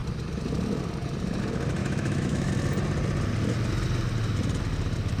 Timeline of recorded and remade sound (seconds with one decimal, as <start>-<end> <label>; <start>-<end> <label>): 0.0-1.8 recorded; 1.8-2.5 remade; 2.5-5.2 recorded